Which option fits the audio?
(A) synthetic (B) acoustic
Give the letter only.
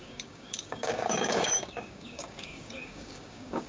A